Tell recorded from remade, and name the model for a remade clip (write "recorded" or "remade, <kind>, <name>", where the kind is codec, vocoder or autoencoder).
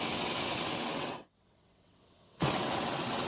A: remade, vocoder, WaveNeXt